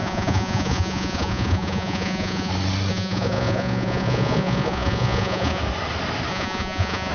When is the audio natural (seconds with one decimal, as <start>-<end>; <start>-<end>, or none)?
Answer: 2.5-2.9; 5.6-6.3